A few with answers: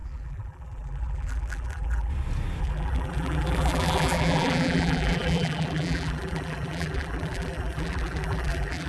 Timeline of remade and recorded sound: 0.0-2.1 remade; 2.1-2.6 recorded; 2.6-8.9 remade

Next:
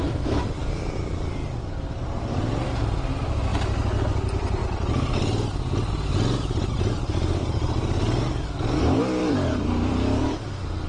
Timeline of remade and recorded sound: 0.0-3.5 remade; 3.5-4.0 recorded; 4.0-4.6 remade; 4.6-6.7 recorded; 6.7-10.9 remade

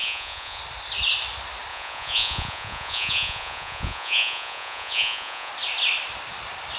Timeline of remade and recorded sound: 0.0-0.6 remade; 0.6-1.7 recorded; 1.7-5.5 remade; 5.5-6.8 recorded

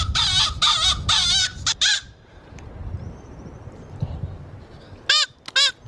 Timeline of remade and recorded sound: 0.0-1.5 recorded; 1.5-4.7 remade; 4.7-5.9 recorded

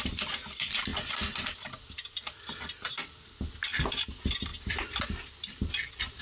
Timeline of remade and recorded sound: 0.0-6.2 recorded